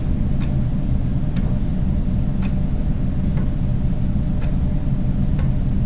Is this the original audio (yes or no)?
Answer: yes